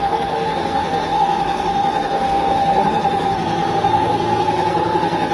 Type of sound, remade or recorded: remade